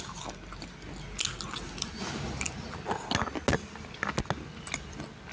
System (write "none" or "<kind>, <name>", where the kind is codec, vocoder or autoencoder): none